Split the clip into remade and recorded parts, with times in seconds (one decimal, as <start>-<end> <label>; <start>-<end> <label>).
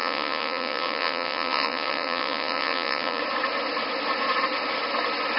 0.0-3.2 remade; 3.2-5.4 recorded